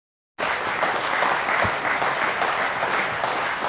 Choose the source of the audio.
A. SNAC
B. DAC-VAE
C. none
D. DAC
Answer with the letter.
C